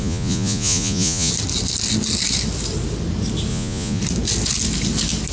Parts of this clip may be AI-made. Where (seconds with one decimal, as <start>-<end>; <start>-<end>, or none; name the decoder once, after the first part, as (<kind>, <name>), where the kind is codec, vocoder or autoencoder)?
0.0-1.3 (vocoder, Vocos); 3.5-4.0